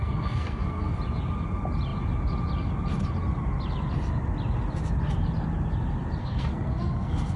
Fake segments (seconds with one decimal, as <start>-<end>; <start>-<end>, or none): 0.0-0.9; 6.2-7.4